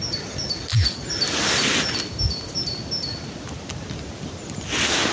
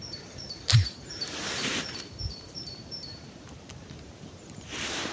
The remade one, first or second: second